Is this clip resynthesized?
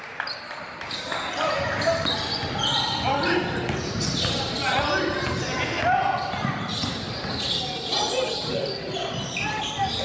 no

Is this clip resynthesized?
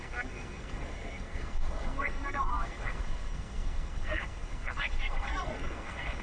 yes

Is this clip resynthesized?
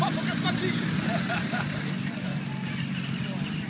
no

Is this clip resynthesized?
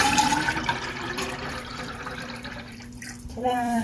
yes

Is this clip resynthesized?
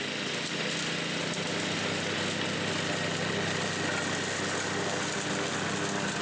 no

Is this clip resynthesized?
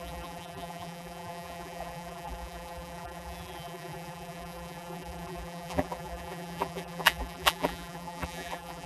yes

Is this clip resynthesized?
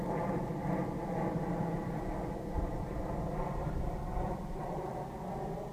no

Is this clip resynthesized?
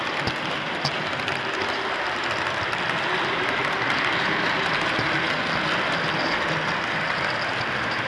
no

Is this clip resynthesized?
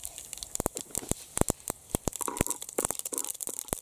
no